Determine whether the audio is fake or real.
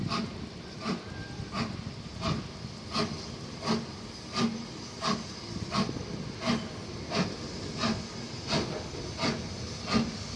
real